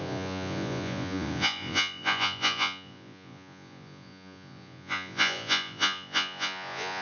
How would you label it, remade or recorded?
remade